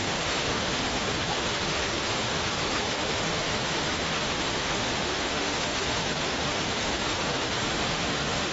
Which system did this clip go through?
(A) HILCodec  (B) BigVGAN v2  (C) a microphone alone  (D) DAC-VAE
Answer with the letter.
D